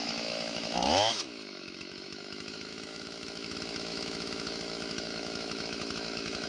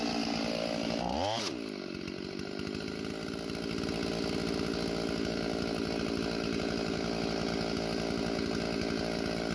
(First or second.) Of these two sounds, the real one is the second